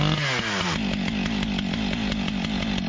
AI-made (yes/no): no